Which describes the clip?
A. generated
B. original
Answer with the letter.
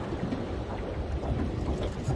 B